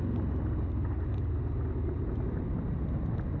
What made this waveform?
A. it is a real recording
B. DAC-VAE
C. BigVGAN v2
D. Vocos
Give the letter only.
A